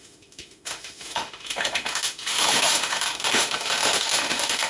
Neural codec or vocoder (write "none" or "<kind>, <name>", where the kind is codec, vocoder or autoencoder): autoencoder, DAC-VAE